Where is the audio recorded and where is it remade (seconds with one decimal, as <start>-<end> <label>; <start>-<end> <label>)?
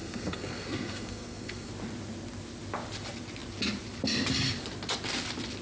0.0-1.7 remade; 1.7-5.6 recorded